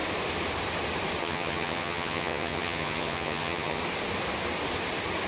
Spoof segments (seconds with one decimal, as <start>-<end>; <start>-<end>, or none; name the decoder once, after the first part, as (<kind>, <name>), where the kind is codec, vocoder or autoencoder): 1.2-3.8 (vocoder, HiFi-GAN)